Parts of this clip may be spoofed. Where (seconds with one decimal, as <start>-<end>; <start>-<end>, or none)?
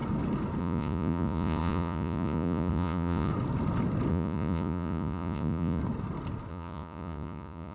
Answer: 0.6-3.3; 4.1-5.8; 6.5-7.7